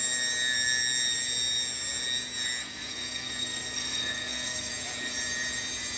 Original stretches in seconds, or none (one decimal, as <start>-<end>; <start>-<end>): 0.0-2.6; 4.7-6.0